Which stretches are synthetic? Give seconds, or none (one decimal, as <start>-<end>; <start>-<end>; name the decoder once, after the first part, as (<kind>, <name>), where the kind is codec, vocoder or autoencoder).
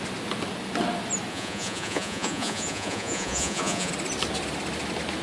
1.3-3.9 (vocoder, Vocos)